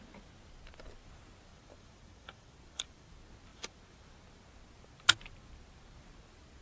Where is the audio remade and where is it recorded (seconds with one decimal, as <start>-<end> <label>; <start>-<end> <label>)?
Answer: 0.0-1.5 recorded; 1.5-3.1 remade; 3.1-3.5 recorded; 3.5-4.1 remade; 4.1-6.6 recorded